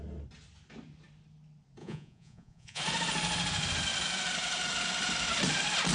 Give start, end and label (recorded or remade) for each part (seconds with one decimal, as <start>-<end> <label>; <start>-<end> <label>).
0.0-1.8 recorded; 1.8-2.8 remade; 2.8-5.9 recorded